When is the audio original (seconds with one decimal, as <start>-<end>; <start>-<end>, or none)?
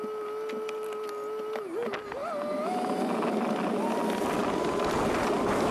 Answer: 0.0-5.7